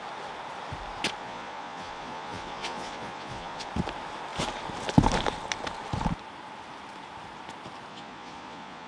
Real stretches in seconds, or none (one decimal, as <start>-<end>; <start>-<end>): 0.0-1.2; 3.7-7.9